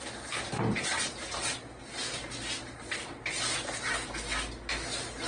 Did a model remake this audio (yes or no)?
no